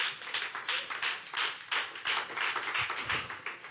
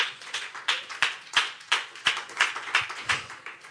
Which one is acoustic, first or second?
first